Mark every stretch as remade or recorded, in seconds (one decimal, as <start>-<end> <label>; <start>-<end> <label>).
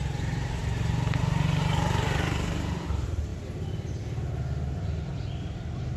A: 0.0-0.6 remade; 0.6-1.2 recorded; 1.2-3.3 remade; 3.3-6.0 recorded